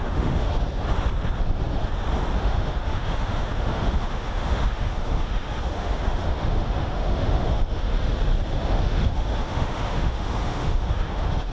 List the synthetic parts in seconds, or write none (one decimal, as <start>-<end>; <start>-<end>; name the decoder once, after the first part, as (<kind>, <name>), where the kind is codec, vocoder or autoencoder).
0.0-0.5 (autoencoder, DAC-VAE); 2.4-7.9; 8.8-11.5